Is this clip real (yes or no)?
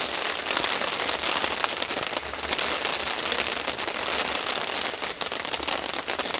yes